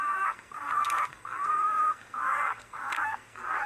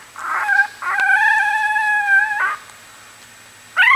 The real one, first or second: second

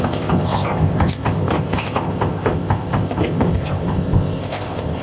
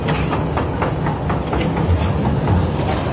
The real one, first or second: second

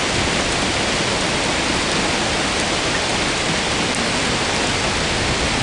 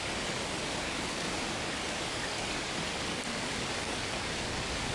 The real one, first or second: first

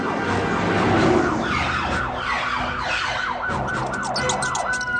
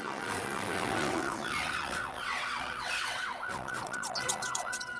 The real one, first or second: first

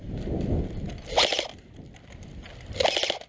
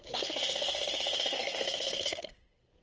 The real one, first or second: first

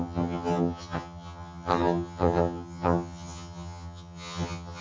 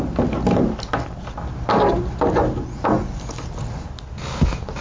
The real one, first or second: second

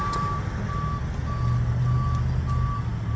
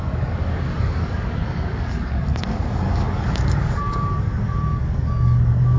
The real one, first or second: first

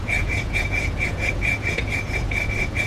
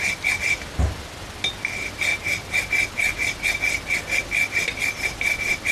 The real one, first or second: second